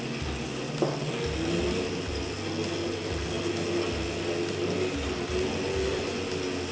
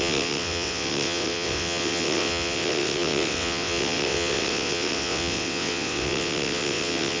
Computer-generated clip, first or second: second